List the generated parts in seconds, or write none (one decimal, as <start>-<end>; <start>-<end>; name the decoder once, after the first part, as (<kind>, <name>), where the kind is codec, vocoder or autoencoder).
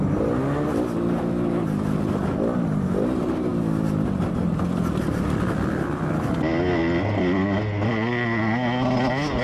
none